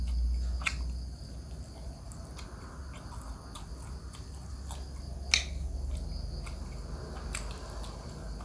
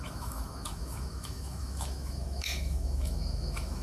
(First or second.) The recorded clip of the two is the first